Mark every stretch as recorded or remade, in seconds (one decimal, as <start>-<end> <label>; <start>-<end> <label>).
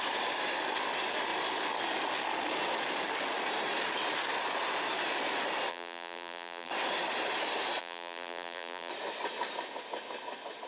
0.0-5.7 recorded; 5.7-6.7 remade; 6.7-7.8 recorded; 7.8-8.9 remade; 8.9-10.7 recorded